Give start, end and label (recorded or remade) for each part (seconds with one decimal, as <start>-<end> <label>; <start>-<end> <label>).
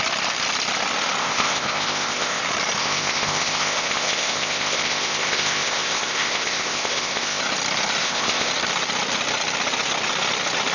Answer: 0.0-1.2 recorded; 1.2-2.4 remade; 2.4-2.8 recorded; 2.8-7.4 remade; 7.4-8.0 recorded; 8.0-8.5 remade; 8.5-10.7 recorded